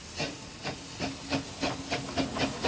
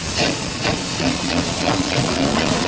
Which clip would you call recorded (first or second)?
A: first